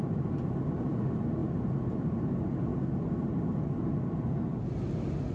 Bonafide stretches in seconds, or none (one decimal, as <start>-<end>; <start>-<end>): 0.0-5.3